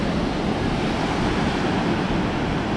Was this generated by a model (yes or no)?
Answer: no